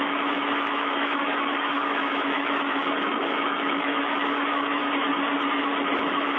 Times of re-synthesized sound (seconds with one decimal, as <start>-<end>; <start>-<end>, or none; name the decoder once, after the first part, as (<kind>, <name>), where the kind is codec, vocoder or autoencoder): 0.0-4.8 (autoencoder, DAC-VAE); 6.0-6.4